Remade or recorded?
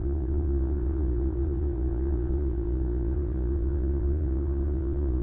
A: remade